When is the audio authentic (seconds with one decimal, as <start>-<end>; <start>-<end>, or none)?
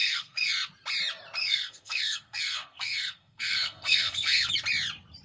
0.5-1.4; 4.5-5.2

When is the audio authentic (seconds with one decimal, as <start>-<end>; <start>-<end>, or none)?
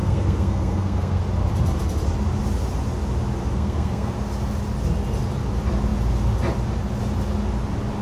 1.2-3.5; 4.1-8.0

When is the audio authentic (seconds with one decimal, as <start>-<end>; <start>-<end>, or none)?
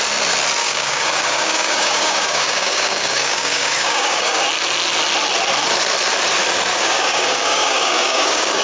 0.0-0.6; 4.4-6.7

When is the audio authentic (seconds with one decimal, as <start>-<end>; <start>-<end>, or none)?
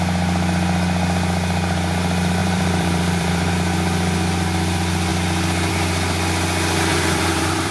0.0-2.4; 3.5-6.9